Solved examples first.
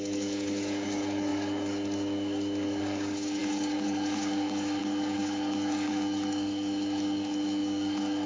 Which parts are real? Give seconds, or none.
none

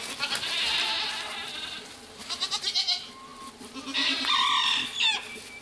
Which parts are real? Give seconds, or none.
0.0-5.6

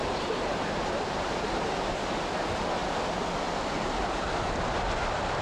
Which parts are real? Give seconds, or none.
1.9-5.4

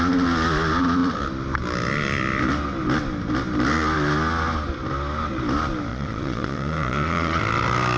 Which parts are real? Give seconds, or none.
0.0-5.9; 7.4-8.0

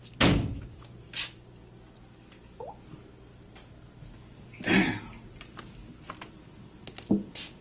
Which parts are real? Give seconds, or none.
0.0-7.6

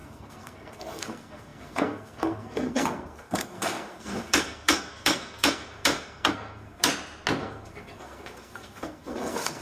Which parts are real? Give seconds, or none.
6.9-7.4

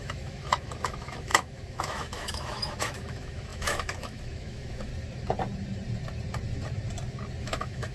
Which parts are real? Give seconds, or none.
4.9-7.4

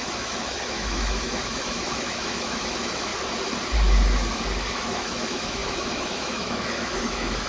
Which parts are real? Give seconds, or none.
3.1-4.7